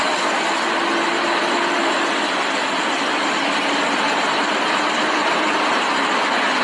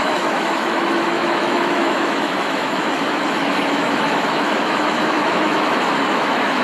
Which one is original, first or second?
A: first